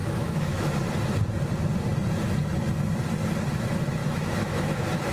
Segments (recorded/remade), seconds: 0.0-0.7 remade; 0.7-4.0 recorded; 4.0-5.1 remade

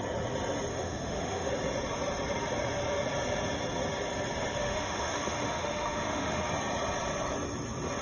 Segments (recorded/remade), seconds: 0.0-0.7 recorded; 0.7-1.5 remade; 1.5-4.6 recorded; 4.6-6.5 remade; 6.5-8.0 recorded

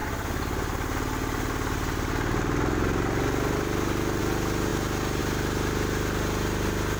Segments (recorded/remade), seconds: 0.0-7.0 recorded

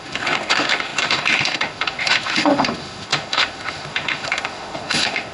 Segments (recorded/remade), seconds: 0.0-5.3 remade

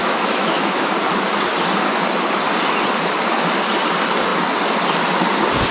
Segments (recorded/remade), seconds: 0.0-0.9 remade; 0.9-5.7 recorded

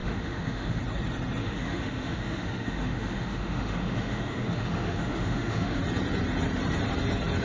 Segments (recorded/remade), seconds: 0.0-0.8 remade; 0.8-1.4 recorded; 1.4-5.8 remade; 5.8-7.4 recorded

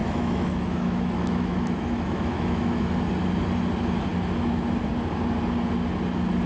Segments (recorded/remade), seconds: 0.0-3.0 remade; 3.0-6.5 recorded